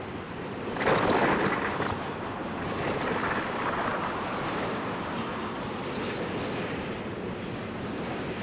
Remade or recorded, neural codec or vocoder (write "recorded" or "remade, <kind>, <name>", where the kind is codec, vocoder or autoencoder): recorded